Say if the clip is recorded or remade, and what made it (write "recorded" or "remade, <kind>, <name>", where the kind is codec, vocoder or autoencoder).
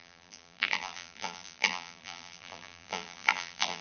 remade, vocoder, BigVGAN v2